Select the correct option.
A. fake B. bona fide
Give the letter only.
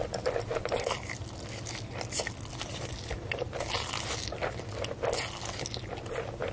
B